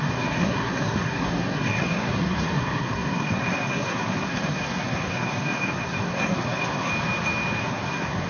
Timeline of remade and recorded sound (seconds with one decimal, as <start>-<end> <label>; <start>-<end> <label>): 0.0-6.9 remade; 6.9-7.6 recorded; 7.6-8.3 remade